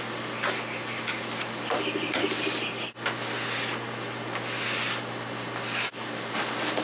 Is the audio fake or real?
real